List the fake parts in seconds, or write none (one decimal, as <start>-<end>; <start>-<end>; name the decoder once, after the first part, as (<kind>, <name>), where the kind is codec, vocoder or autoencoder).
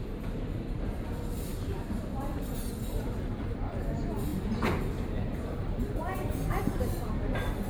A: 0.0-1.5 (vocoder, BigVGAN v2); 2.2-7.7